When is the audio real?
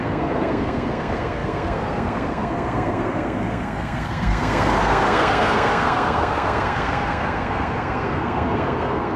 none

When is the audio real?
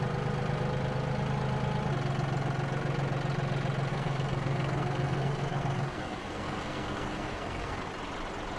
0.0-3.9; 7.9-8.6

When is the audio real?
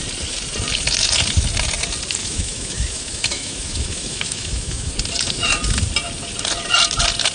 0.0-2.2; 4.9-7.3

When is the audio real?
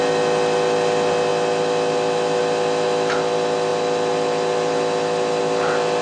0.0-6.0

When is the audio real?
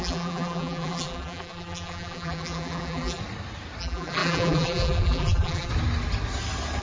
3.2-3.8; 5.7-6.8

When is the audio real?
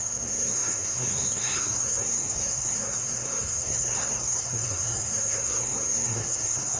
none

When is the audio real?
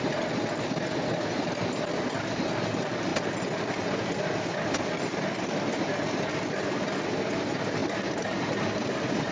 0.0-9.3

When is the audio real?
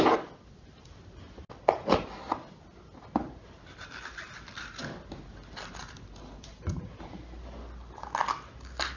0.0-5.8; 6.7-9.0